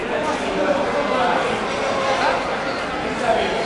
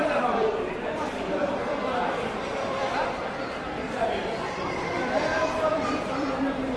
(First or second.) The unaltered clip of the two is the first